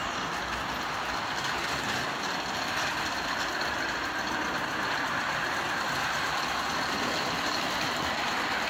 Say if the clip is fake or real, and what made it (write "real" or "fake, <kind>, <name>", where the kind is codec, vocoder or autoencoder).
real